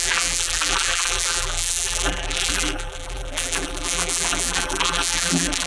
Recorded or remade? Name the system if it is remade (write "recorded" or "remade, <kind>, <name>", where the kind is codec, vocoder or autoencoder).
remade, vocoder, BigVGAN v2